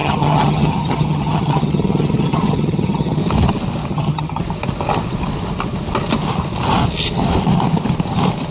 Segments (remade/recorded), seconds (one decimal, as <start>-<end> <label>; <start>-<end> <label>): 0.0-3.2 remade; 3.2-3.9 recorded; 3.9-4.4 remade; 4.4-8.5 recorded

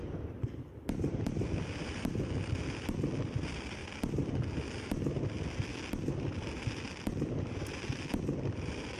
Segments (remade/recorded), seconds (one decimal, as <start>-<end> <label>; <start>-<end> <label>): 0.0-9.0 remade

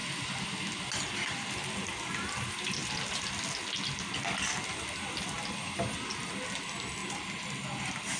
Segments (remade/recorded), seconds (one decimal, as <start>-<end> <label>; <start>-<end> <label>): 0.0-7.0 recorded; 7.0-8.2 remade

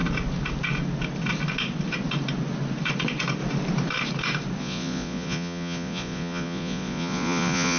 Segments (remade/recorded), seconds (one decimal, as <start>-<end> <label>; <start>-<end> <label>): 0.0-4.6 recorded; 4.6-7.8 remade

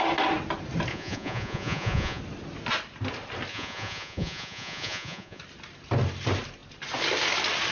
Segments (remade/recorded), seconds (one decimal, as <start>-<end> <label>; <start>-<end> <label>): 0.0-0.9 recorded; 0.9-2.2 remade; 2.2-3.5 recorded; 3.5-5.4 remade; 5.4-7.7 recorded

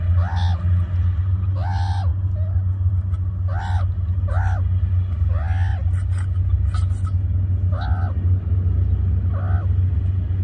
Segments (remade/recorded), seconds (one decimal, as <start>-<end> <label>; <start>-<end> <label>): 0.0-10.4 recorded

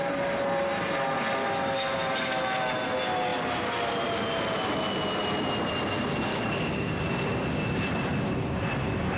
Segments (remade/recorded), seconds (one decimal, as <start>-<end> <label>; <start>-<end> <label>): 0.0-1.4 recorded; 1.4-2.4 remade; 2.4-6.3 recorded; 6.3-6.9 remade; 6.9-9.2 recorded

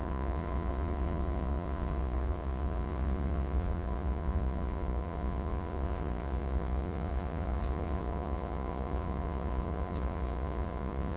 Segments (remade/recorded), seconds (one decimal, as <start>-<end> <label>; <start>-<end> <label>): 0.0-11.2 remade